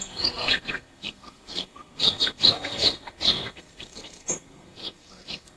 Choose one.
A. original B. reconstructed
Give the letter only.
B